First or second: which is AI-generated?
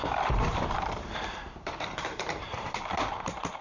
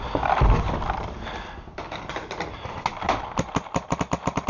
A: first